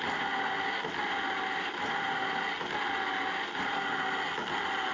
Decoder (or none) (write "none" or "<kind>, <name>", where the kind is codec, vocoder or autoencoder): none